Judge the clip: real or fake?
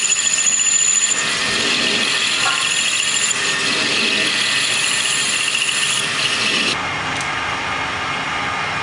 real